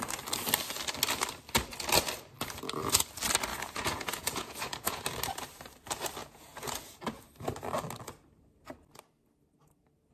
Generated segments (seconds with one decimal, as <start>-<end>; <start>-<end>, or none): 3.5-5.0; 6.2-7.0